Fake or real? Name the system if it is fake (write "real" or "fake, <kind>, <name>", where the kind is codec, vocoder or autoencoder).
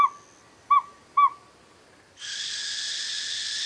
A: real